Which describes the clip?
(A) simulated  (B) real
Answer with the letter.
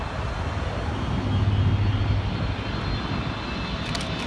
B